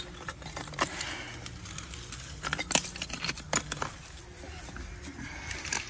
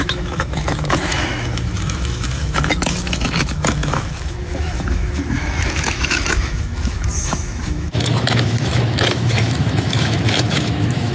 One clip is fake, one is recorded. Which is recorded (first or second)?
first